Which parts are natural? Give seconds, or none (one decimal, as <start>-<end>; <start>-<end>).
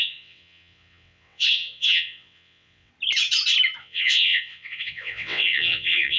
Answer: 2.9-3.8